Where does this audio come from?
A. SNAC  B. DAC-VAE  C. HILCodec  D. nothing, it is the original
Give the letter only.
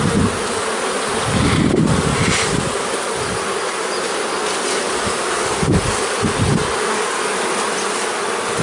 D